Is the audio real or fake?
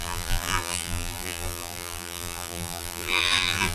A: fake